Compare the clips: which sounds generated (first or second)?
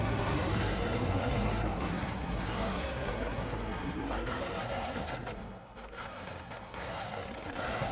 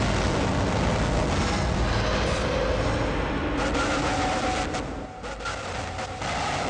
first